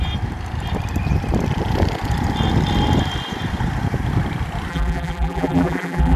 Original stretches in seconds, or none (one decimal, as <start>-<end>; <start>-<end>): 0.0-4.7